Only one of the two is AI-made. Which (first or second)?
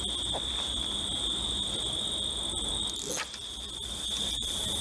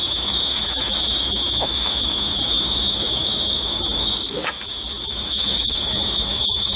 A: second